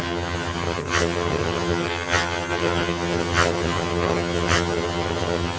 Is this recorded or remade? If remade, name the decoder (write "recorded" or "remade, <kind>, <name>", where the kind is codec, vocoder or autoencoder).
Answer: remade, vocoder, HiFi-GAN